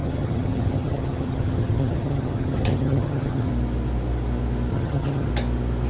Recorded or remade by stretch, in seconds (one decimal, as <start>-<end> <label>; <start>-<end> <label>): 0.0-3.5 remade; 3.5-4.7 recorded; 4.7-5.3 remade; 5.3-5.9 recorded